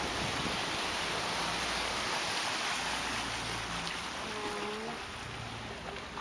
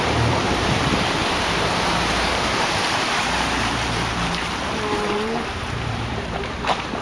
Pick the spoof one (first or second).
second